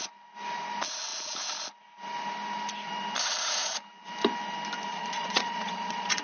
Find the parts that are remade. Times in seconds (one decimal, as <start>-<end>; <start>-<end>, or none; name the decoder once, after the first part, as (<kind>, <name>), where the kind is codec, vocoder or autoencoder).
4.9-6.2 (vocoder, Vocos)